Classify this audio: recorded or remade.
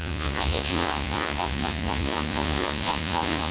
remade